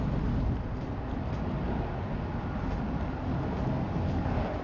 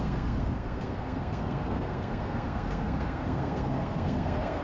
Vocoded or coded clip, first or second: second